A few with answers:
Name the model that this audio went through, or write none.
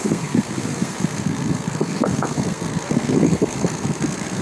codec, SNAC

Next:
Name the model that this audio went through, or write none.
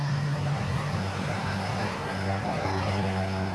codec, SNAC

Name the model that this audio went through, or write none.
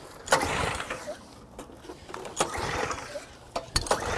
none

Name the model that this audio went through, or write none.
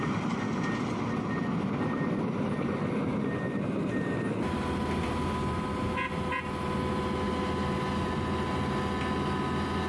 none